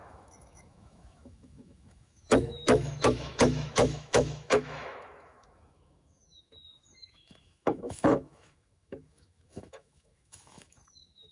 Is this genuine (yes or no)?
no